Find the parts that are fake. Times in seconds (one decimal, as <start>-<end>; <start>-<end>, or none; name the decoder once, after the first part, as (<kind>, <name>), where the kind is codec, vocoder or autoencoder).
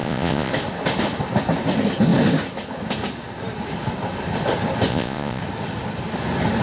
0.0-0.5 (vocoder, Vocos); 4.9-5.4